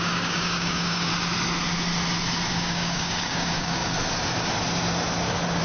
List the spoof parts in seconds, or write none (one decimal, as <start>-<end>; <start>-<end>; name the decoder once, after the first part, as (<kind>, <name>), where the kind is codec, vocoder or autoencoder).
0.0-1.1 (codec, DAC); 2.5-3.8